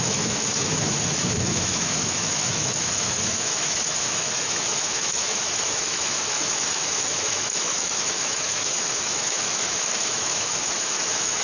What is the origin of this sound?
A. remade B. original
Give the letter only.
A